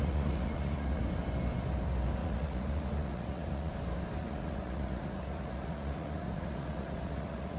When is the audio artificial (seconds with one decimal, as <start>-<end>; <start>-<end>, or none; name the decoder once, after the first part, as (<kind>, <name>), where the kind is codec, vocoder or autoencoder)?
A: 0.0-1.0 (vocoder, Vocos); 2.2-3.7; 4.2-7.6